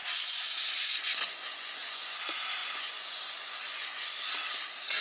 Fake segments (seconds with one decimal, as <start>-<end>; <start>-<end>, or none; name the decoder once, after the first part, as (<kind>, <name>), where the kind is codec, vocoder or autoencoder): 0.0-2.2 (vocoder, Vocos); 2.6-4.1